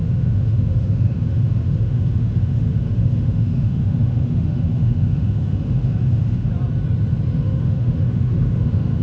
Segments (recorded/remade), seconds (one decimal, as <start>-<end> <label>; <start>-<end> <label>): 0.0-6.5 remade; 6.5-7.4 recorded; 7.4-9.0 remade